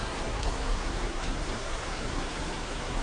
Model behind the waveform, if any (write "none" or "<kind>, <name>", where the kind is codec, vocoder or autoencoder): codec, SNAC